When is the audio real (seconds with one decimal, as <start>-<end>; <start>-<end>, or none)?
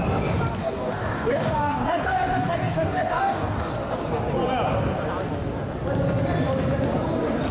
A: 0.0-0.6; 3.7-7.5